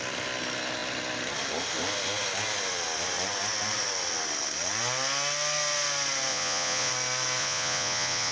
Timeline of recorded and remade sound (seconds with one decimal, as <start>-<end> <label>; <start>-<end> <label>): 0.0-6.3 recorded; 6.3-6.9 remade; 6.9-7.4 recorded; 7.4-8.3 remade